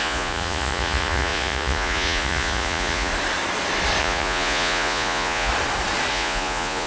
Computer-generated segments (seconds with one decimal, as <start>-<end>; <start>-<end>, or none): 0.0-3.1; 4.0-5.5; 6.1-6.9